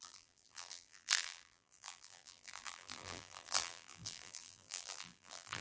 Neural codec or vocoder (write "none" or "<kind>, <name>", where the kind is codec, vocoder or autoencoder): vocoder, BigVGAN v2